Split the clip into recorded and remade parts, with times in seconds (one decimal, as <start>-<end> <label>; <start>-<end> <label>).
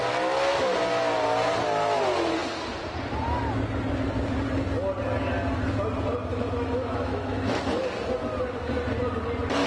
0.0-6.3 recorded; 6.3-7.6 remade; 7.6-9.7 recorded